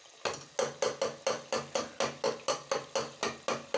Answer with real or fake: real